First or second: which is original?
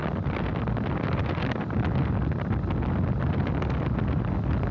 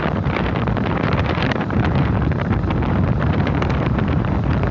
first